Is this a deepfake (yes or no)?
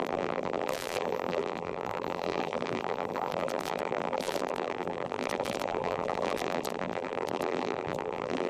yes